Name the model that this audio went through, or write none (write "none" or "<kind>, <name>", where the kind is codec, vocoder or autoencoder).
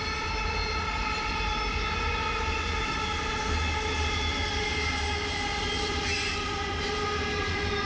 none